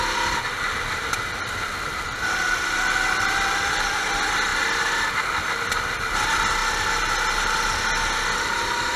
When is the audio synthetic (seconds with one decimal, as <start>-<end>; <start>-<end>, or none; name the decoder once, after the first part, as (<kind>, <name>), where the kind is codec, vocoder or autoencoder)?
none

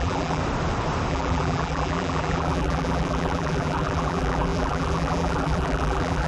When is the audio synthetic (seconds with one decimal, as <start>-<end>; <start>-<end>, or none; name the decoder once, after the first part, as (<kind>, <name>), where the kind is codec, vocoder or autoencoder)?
0.0-0.4 (vocoder, BigVGAN v2); 1.1-6.3

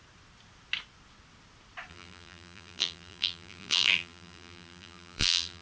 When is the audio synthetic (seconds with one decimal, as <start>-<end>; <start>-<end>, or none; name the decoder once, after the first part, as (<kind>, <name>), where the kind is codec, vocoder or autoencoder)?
1.9-5.6 (vocoder, BigVGAN v2)

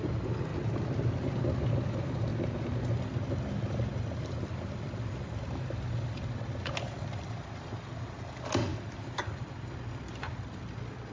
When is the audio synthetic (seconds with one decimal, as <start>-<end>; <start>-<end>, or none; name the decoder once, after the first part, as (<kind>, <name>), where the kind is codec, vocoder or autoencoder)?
0.0-0.5 (vocoder, BigVGAN v2); 1.9-2.3; 2.9-11.1